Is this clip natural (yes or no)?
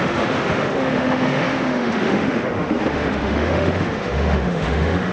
no